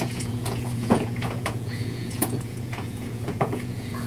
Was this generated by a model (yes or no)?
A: yes